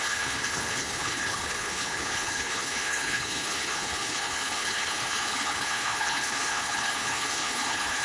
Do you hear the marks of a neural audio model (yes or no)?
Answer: yes